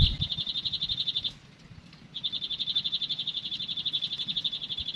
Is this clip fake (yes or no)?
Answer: no